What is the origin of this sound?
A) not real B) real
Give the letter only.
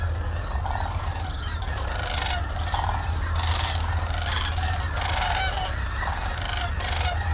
B